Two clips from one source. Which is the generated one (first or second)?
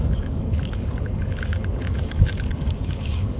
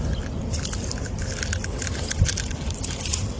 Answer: first